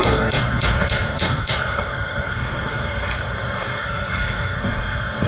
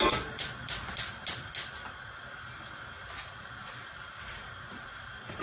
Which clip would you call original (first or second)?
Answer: second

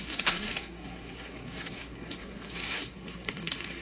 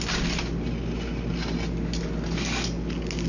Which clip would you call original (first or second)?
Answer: second